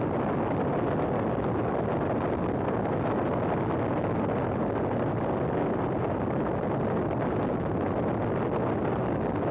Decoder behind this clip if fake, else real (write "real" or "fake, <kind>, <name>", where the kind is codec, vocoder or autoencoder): real